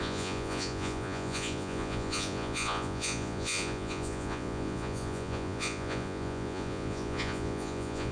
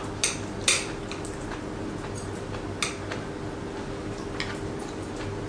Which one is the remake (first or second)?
first